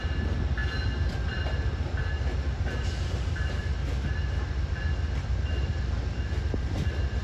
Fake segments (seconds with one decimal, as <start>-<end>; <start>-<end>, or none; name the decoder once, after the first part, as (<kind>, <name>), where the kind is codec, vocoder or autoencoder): none